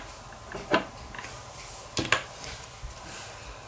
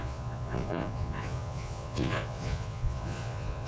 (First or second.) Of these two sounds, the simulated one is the second